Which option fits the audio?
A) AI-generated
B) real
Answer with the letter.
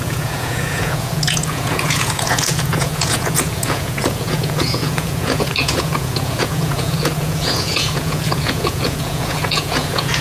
A